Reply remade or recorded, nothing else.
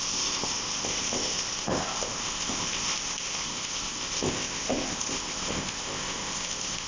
remade